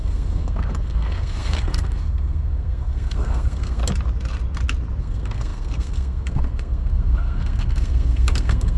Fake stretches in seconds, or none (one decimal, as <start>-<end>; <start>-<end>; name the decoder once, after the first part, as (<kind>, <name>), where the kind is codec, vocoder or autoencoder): 0.0-3.8 (codec, SNAC); 5.0-8.8

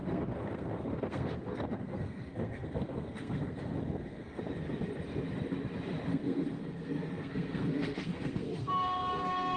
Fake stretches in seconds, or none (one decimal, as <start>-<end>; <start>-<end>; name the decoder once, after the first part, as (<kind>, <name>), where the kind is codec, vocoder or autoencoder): 0.0-4.4 (codec, SNAC); 6.1-9.6

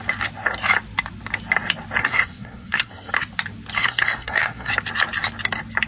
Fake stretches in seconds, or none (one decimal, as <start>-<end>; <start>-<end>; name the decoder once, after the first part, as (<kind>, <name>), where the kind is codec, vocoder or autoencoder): 2.0-3.1 (codec, SNAC); 3.8-4.7